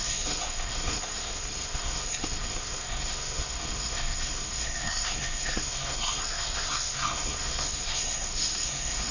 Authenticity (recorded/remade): remade